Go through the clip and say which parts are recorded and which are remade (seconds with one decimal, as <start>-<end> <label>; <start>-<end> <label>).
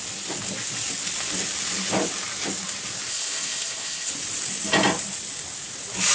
0.0-3.1 recorded; 3.1-4.1 remade; 4.1-6.1 recorded